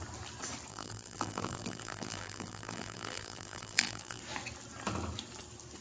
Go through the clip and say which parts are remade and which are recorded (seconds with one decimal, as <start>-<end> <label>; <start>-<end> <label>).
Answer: 0.0-0.7 recorded; 0.7-4.2 remade; 4.2-5.8 recorded